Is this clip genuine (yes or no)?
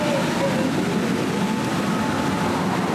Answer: yes